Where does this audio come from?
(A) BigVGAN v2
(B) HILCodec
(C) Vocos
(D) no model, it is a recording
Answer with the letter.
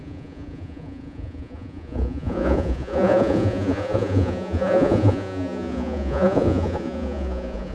C